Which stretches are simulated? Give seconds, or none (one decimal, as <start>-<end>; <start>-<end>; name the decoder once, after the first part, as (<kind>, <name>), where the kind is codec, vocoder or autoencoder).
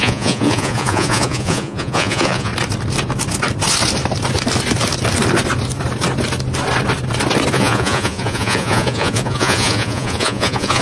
0.0-2.5 (vocoder, Vocos); 7.5-10.8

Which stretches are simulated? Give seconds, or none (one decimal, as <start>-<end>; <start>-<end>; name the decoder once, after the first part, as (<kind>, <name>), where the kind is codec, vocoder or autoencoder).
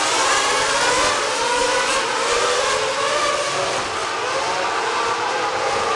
none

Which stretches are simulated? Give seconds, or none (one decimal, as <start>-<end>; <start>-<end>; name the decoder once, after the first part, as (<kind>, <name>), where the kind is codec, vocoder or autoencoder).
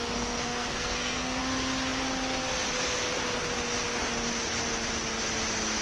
0.0-1.4 (codec, SNAC)